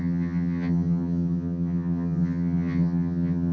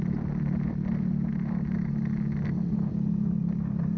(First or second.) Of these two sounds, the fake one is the first